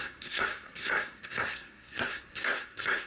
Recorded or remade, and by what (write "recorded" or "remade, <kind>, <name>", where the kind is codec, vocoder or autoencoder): remade, codec, SNAC